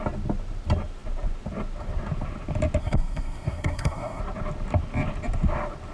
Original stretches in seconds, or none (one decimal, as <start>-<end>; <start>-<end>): 0.0-2.8; 4.2-5.9